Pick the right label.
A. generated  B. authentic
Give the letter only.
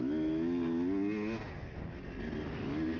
B